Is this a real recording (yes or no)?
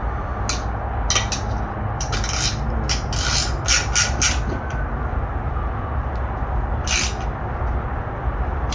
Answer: yes